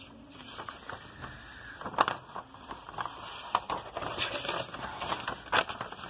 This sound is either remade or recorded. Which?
recorded